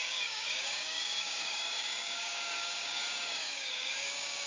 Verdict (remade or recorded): remade